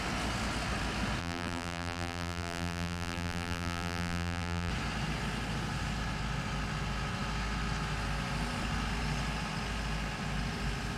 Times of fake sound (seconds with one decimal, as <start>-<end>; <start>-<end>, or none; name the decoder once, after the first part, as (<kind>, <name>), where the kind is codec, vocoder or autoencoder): 1.2-4.7 (vocoder, BigVGAN v2)

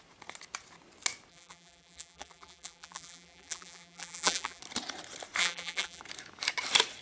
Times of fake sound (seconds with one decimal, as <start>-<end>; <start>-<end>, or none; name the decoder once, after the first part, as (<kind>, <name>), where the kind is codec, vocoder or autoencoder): 1.3-4.6 (vocoder, BigVGAN v2); 5.4-6.0